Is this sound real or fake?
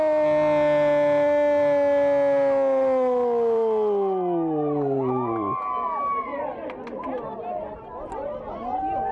real